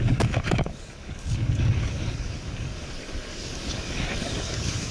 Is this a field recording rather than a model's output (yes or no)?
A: no